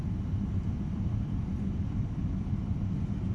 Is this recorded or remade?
recorded